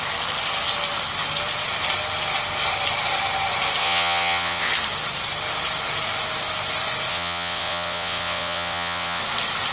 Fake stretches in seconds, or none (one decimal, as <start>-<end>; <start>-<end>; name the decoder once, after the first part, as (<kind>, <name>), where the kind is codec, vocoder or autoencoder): 3.8-4.7 (vocoder, WaveNeXt); 7.1-9.2